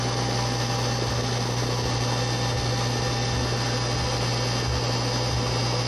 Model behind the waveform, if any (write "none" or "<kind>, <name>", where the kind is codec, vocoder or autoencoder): none